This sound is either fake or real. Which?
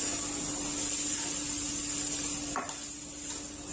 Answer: real